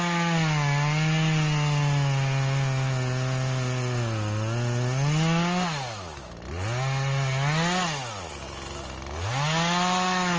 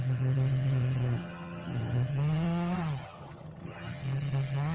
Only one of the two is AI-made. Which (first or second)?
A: second